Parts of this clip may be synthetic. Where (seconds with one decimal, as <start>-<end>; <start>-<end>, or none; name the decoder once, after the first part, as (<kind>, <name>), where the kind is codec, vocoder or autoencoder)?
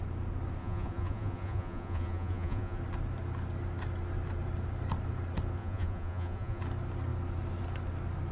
0.6-2.8 (vocoder, Vocos); 5.6-6.6